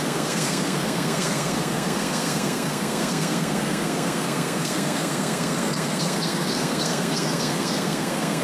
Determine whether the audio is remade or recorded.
remade